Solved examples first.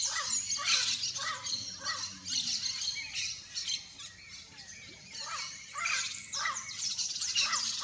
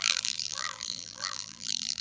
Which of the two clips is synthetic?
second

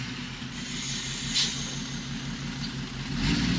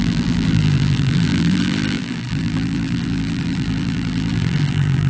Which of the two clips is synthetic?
second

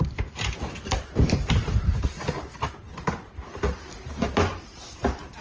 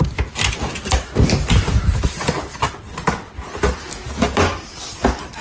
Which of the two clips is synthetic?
first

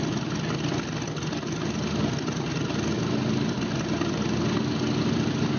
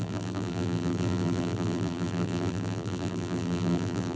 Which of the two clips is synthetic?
second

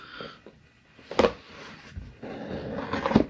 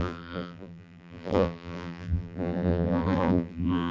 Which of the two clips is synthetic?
second